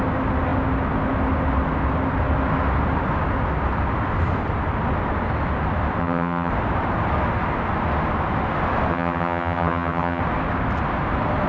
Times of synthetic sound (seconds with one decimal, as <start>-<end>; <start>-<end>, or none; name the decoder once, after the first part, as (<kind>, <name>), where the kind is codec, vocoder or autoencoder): 6.0-6.5 (vocoder, HiFi-GAN); 8.9-10.2

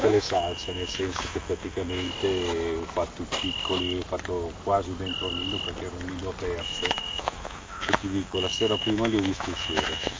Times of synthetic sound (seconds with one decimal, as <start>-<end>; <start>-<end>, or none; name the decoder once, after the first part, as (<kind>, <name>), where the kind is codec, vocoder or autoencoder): 0.0-2.1 (autoencoder, DAC-VAE); 6.6-10.2

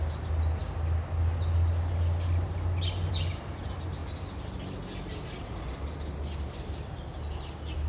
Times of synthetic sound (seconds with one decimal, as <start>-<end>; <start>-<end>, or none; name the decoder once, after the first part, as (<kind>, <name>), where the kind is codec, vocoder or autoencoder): none

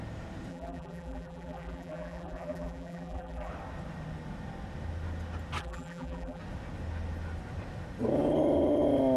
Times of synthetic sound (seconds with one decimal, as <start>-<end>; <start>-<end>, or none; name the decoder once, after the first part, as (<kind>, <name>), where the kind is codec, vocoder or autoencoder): 0.5-3.5 (vocoder, BigVGAN v2); 5.6-6.4

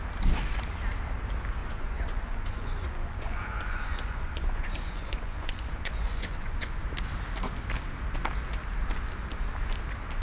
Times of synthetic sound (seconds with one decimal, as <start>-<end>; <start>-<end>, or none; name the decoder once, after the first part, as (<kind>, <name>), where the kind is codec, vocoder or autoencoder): 1.6-6.8 (vocoder, Vocos)

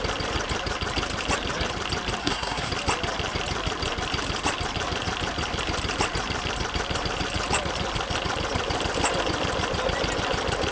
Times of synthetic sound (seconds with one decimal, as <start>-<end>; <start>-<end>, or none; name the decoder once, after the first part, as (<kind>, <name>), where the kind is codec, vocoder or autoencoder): 2.2-2.7 (codec, SNAC)

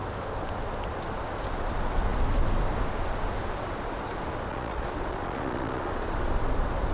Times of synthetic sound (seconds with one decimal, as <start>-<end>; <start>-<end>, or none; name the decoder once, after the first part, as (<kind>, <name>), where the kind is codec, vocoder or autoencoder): 4.5-6.3 (vocoder, Vocos)

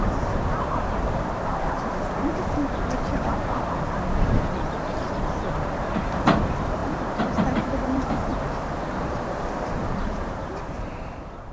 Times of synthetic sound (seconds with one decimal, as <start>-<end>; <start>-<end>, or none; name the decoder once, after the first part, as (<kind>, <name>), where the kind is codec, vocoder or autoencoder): 0.0-8.3 (vocoder, BigVGAN v2); 9.0-11.5